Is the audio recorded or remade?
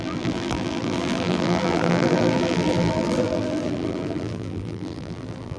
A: remade